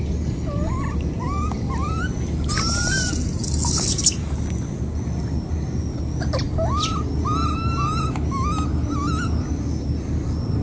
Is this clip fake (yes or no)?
no